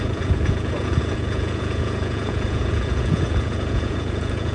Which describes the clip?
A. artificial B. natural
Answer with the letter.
A